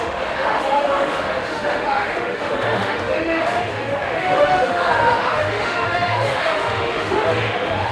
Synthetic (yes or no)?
yes